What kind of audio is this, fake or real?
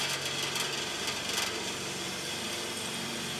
real